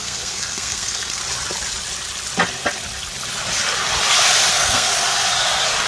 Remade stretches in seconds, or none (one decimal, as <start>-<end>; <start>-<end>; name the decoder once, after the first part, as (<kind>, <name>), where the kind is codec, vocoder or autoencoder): 0.0-1.2 (codec, SNAC); 4.5-4.9

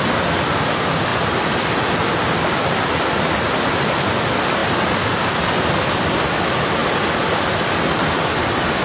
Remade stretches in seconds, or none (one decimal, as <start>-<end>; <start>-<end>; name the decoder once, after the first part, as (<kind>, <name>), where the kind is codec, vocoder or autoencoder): none

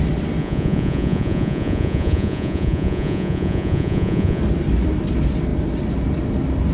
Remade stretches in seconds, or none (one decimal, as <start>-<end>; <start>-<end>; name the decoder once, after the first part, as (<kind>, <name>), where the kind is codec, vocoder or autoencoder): 0.4-4.4 (vocoder, Vocos)